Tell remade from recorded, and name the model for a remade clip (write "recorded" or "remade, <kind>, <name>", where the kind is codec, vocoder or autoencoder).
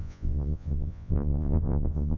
remade, vocoder, Vocos